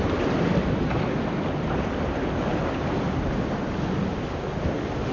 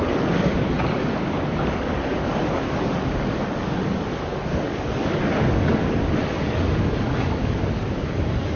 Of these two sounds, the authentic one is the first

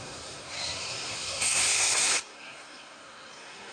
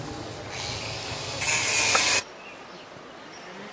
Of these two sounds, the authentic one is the second